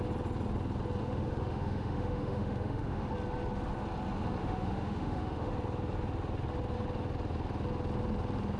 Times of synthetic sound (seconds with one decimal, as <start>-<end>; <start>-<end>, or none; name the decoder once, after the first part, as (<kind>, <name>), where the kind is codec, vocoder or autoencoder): 1.0-3.1 (autoencoder, DAC-VAE); 4.4-5.5